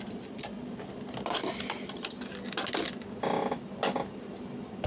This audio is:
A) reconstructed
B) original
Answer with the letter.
B